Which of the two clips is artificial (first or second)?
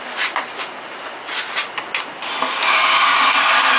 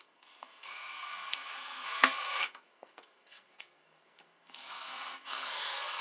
second